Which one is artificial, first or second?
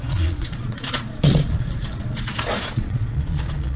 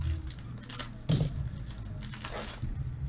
first